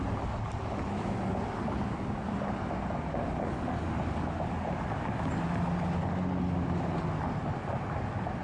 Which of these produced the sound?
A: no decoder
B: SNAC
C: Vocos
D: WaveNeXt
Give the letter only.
A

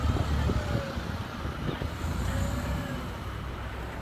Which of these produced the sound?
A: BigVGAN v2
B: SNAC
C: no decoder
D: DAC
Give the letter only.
C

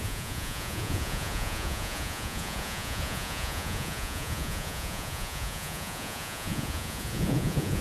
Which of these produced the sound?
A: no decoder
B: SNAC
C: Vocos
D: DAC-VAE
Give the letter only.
C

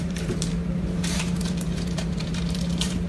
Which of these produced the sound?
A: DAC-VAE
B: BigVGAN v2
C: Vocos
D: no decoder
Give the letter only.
B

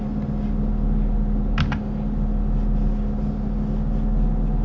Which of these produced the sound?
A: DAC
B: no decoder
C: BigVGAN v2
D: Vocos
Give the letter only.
B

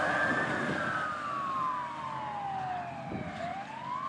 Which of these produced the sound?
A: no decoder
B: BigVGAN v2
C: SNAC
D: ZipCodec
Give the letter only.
A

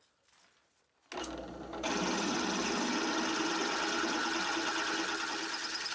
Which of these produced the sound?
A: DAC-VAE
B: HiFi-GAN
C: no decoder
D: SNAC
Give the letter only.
C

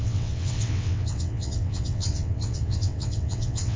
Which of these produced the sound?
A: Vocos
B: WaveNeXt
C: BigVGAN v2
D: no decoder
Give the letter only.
B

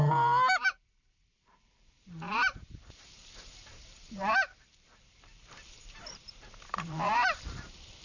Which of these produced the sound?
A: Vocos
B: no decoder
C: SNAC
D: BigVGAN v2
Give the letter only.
D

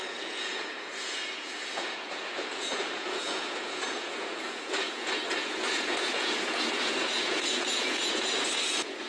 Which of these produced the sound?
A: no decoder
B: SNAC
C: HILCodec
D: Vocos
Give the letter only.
D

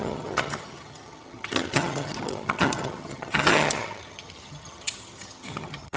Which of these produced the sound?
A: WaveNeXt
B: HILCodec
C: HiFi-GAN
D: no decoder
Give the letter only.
C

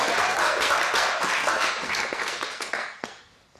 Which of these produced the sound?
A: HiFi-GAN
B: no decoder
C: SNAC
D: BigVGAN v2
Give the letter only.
C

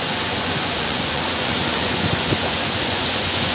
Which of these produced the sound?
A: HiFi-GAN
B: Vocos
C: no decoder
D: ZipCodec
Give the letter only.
B